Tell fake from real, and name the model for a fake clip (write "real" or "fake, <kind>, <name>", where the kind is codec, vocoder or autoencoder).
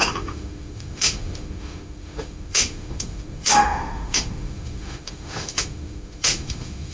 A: fake, autoencoder, DAC-VAE